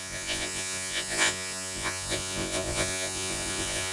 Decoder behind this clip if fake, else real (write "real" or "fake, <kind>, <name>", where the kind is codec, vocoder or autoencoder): fake, vocoder, Vocos